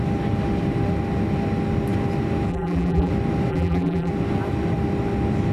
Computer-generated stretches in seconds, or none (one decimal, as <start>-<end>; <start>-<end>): 2.5-3.1; 3.5-4.1